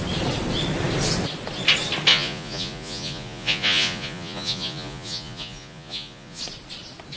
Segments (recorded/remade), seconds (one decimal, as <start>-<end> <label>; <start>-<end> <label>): 0.0-2.1 recorded; 2.1-6.4 remade; 6.4-7.2 recorded